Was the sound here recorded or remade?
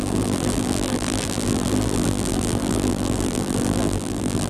remade